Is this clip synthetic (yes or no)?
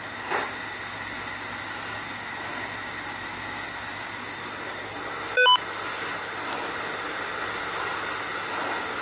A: no